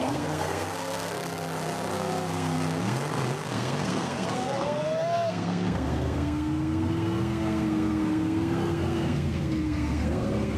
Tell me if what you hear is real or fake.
fake